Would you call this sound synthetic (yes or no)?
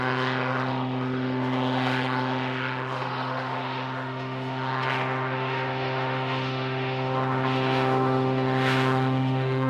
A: yes